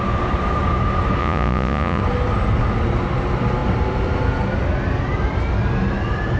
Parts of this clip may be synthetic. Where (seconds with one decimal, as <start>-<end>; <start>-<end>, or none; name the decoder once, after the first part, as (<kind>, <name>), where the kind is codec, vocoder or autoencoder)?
1.2-2.0 (vocoder, Vocos)